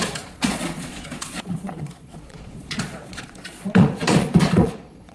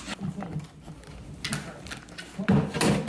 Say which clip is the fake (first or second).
first